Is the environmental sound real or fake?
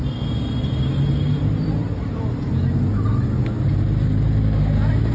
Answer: real